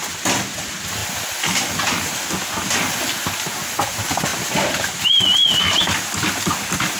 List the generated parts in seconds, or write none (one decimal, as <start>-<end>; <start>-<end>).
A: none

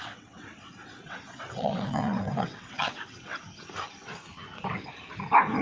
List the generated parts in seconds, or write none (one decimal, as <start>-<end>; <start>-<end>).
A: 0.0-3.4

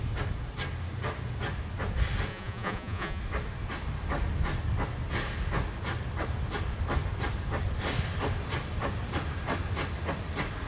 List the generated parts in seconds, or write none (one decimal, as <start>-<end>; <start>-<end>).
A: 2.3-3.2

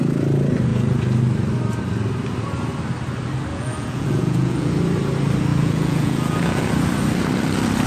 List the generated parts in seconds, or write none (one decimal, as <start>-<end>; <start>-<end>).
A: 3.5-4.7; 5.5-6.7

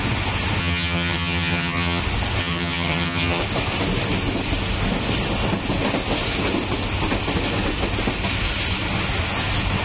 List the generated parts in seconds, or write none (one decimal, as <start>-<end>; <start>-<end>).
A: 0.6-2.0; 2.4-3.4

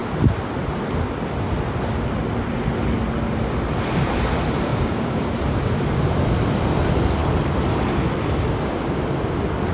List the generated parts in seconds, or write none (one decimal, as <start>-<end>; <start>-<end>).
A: 4.7-5.2

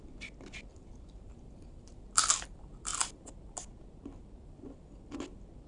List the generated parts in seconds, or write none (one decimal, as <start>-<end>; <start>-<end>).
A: 0.7-1.9

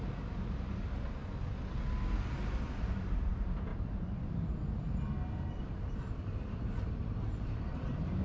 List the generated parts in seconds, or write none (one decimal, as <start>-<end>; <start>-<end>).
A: 0.0-1.2; 2.1-8.2